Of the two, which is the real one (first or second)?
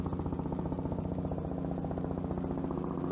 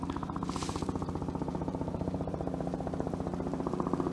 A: first